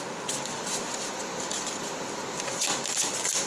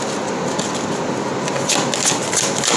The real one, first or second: second